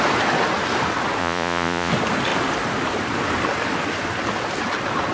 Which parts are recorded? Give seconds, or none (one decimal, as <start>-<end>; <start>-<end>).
0.0-1.2; 1.9-5.1